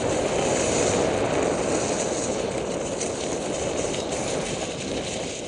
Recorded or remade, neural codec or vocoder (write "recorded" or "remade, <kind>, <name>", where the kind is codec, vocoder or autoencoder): recorded